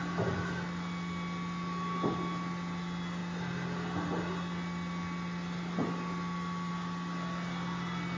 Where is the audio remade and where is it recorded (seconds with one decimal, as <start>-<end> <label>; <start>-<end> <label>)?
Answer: 0.0-8.2 recorded